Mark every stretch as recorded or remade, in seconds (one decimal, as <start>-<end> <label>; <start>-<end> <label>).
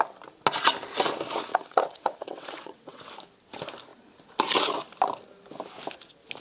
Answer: 0.0-1.5 recorded; 1.5-3.0 remade; 3.0-6.4 recorded